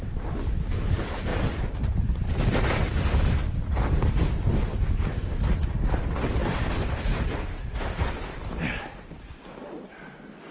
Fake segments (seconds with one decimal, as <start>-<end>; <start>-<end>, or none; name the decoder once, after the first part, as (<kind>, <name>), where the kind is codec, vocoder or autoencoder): none